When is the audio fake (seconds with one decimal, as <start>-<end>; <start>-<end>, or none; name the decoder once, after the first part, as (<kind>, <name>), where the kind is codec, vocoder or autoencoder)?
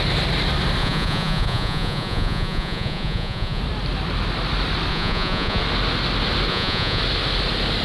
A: 0.8-3.6 (vocoder, Vocos); 4.9-5.6; 6.5-7.0